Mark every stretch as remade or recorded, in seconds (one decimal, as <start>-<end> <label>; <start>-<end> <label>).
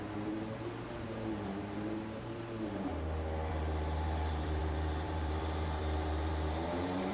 0.0-2.9 remade; 2.9-3.5 recorded; 3.5-7.1 remade